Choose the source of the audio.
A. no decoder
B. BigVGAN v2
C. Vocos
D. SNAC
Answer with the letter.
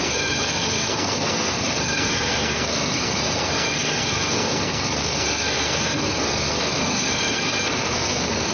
D